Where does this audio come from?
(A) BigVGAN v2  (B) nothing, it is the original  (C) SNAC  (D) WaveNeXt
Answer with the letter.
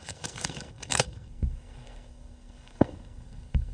C